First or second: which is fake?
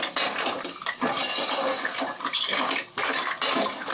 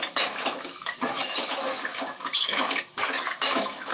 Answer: second